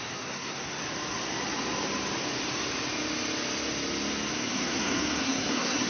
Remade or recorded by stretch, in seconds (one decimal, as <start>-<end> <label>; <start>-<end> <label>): 0.0-0.8 remade; 0.8-4.3 recorded; 4.3-5.9 remade